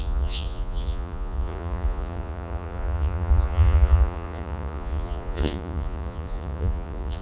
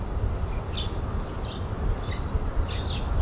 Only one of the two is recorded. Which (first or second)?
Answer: second